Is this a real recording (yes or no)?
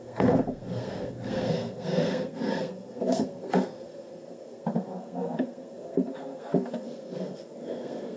no